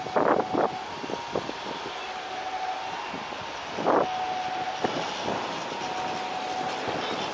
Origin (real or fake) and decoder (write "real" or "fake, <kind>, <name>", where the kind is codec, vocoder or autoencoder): real